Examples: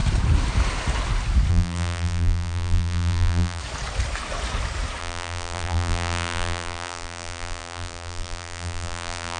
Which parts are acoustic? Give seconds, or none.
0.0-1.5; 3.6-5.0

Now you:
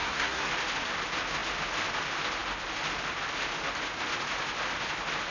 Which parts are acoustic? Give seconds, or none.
0.5-5.3

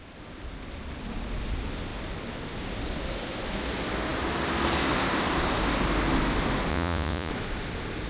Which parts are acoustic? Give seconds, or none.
0.0-6.7; 7.3-8.1